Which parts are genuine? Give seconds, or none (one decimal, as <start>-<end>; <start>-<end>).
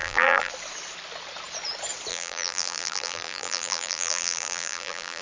0.5-2.1